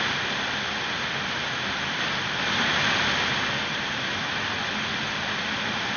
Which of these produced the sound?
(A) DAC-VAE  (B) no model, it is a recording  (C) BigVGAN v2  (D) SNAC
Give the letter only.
C